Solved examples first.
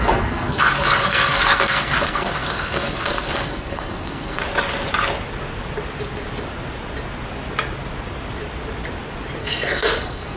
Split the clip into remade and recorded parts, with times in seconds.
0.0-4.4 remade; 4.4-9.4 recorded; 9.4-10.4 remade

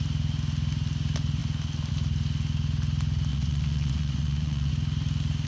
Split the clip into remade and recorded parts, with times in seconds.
0.0-3.3 recorded; 3.3-4.7 remade; 4.7-5.5 recorded

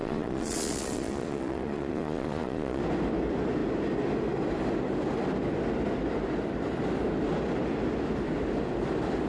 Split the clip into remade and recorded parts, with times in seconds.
0.0-2.8 remade; 2.8-9.3 recorded

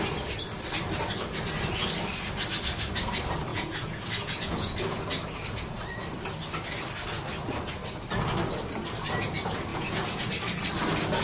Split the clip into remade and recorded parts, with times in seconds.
0.0-3.5 recorded; 3.5-4.7 remade; 4.7-9.7 recorded; 9.7-10.3 remade; 10.3-11.2 recorded